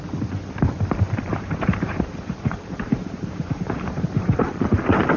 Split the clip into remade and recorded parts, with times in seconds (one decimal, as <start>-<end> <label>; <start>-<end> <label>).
0.0-1.3 recorded; 1.3-4.4 remade; 4.4-5.2 recorded